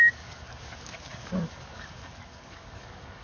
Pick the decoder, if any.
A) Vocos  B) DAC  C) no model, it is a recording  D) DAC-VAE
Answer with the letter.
B